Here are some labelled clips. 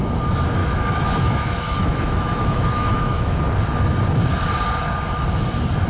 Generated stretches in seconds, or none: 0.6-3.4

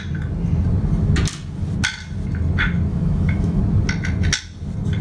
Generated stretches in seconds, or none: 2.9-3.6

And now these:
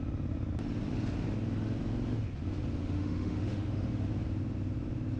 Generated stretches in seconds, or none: 2.8-4.1